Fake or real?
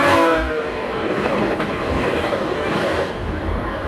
fake